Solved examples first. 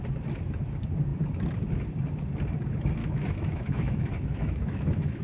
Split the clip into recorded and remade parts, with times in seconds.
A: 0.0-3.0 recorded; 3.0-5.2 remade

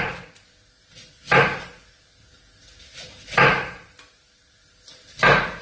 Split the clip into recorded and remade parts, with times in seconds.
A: 0.0-5.6 recorded

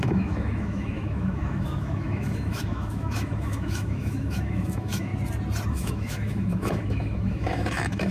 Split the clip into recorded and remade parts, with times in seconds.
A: 0.0-5.1 remade; 5.1-5.7 recorded; 5.7-8.1 remade